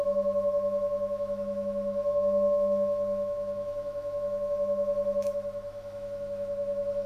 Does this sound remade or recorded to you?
remade